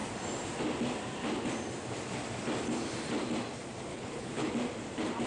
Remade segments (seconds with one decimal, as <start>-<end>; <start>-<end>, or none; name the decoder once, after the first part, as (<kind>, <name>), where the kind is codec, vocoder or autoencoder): 3.9-4.5 (codec, HILCodec)